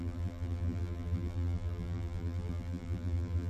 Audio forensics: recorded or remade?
remade